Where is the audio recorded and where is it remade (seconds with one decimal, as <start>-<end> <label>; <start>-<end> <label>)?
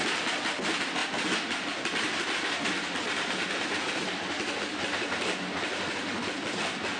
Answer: 0.0-7.0 recorded